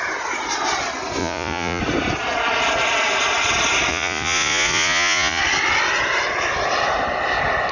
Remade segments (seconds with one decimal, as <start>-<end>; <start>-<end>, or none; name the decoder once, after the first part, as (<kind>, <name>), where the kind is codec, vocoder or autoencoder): 1.2-1.8 (vocoder, Vocos); 3.9-5.4